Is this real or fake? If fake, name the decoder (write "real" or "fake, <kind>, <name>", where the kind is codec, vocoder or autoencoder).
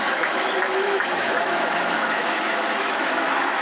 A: fake, autoencoder, DAC-VAE